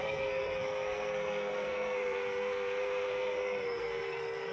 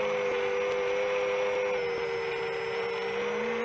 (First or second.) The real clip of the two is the second